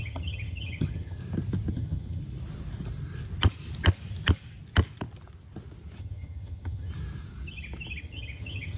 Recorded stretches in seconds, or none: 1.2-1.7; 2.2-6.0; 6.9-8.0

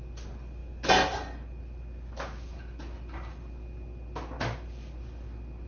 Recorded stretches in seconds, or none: 0.0-5.7

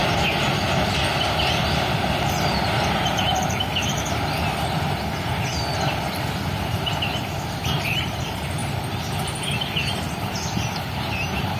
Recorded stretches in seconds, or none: 0.0-7.6; 8.2-11.6